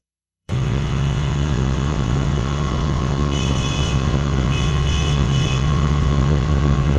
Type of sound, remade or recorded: remade